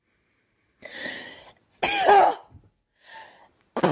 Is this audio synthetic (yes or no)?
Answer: no